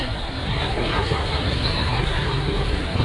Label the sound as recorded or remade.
remade